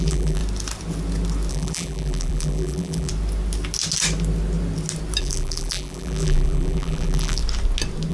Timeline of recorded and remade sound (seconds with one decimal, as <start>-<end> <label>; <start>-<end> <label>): 0.0-0.4 remade; 0.4-1.5 recorded; 1.5-3.1 remade; 3.1-5.2 recorded; 5.2-7.4 remade; 7.4-8.1 recorded